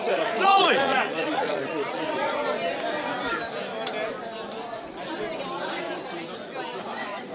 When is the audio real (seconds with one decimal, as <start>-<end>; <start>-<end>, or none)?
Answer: 2.4-6.8